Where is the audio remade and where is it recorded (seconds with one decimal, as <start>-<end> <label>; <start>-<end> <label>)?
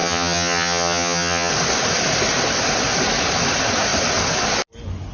0.0-1.5 remade; 1.5-5.1 recorded